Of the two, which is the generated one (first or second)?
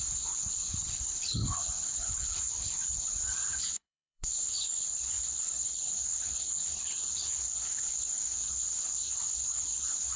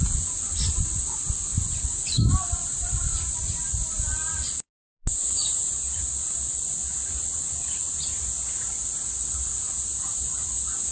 first